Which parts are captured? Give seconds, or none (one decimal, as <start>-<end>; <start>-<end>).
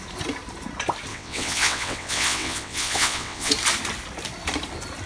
0.0-1.1; 3.5-5.1